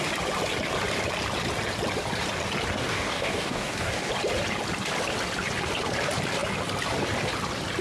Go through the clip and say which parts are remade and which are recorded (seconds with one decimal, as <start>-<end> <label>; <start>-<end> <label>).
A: 0.0-2.8 recorded; 2.8-4.1 remade; 4.1-7.8 recorded

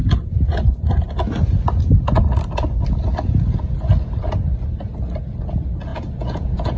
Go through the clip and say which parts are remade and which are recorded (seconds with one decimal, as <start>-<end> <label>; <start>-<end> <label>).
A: 0.0-5.9 recorded; 5.9-6.8 remade

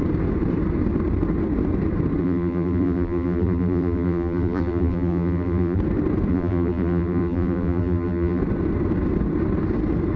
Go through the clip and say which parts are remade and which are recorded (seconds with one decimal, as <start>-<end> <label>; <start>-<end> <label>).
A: 0.0-2.2 recorded; 2.2-5.8 remade; 5.8-6.3 recorded; 6.3-8.4 remade; 8.4-10.2 recorded